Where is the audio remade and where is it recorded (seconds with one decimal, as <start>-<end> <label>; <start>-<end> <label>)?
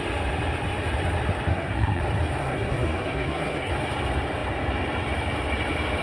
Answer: 0.0-1.5 recorded; 1.5-2.0 remade; 2.0-2.4 recorded; 2.4-3.7 remade; 3.7-6.0 recorded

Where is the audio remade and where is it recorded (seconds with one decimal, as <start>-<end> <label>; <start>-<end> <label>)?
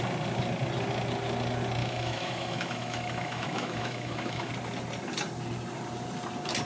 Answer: 0.0-1.8 recorded; 1.8-4.5 remade; 4.5-6.6 recorded